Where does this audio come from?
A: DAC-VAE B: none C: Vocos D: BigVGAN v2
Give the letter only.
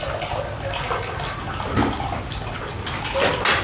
B